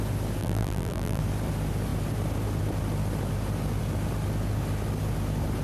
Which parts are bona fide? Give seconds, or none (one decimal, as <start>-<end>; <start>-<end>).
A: 0.0-0.4; 1.2-5.6